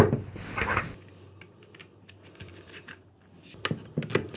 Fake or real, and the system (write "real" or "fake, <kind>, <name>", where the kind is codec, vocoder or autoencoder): real